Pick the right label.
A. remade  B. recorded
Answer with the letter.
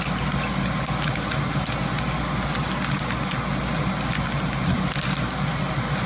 B